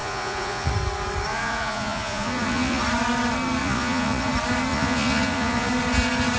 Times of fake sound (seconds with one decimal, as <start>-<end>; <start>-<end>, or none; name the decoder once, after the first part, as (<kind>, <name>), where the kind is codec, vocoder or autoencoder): 0.0-0.7 (vocoder, Vocos); 1.3-2.8; 3.6-4.3; 4.7-5.7